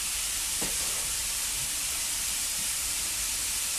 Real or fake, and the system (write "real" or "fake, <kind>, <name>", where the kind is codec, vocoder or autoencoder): fake, vocoder, BigVGAN v2